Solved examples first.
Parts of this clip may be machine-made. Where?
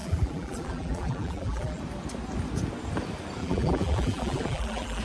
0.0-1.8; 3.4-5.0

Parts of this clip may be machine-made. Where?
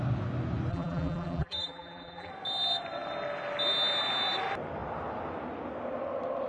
0.7-2.3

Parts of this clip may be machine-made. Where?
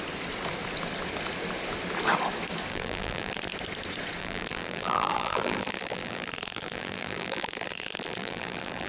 2.7-3.5; 4.2-8.9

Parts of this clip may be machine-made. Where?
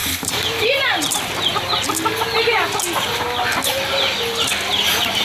0.0-0.7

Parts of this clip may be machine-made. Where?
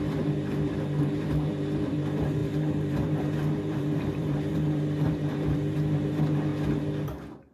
0.0-6.5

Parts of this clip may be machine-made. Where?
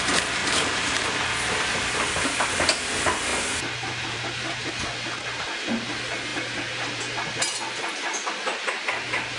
0.4-1.2; 3.3-4.7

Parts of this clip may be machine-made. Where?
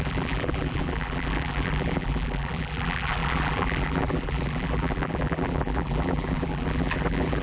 0.0-7.4